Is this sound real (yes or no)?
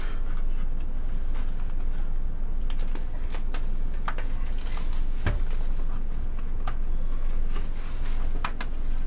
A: yes